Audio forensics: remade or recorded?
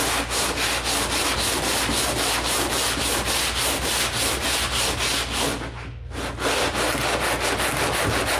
recorded